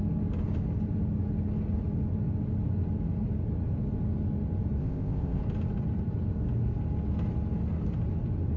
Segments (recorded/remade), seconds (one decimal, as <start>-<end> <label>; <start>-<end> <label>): 0.0-4.8 recorded; 4.8-5.4 remade; 5.4-8.6 recorded